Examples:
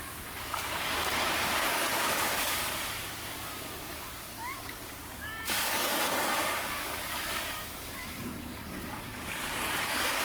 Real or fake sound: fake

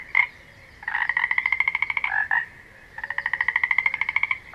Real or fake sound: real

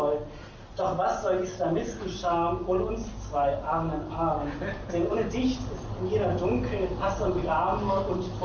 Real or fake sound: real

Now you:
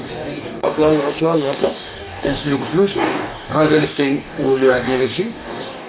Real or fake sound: fake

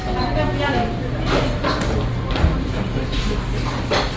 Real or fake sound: real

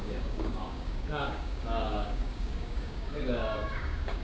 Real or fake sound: fake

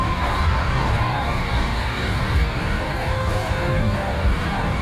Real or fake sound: fake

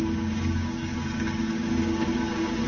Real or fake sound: fake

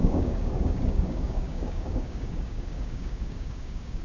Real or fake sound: fake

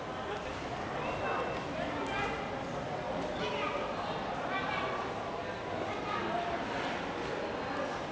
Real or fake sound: real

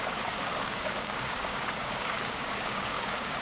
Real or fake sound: fake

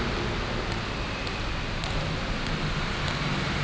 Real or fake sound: real